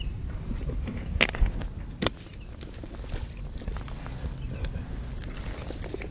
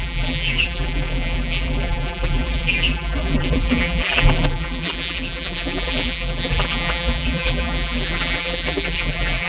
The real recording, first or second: first